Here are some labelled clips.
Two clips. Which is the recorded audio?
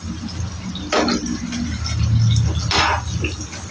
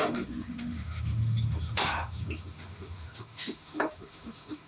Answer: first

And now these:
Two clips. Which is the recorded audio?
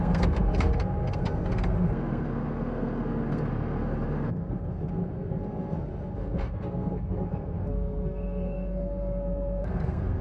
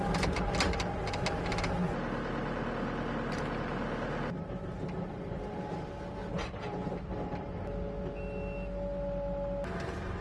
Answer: second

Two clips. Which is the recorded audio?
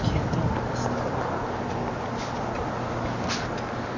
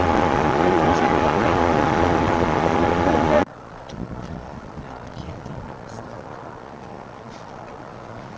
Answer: first